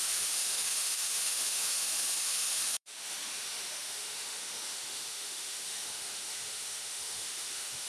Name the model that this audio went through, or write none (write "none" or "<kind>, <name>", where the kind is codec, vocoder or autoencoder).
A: autoencoder, DAC-VAE